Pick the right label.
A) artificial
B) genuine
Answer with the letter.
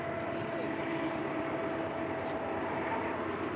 B